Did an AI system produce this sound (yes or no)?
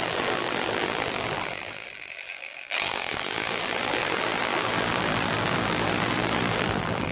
yes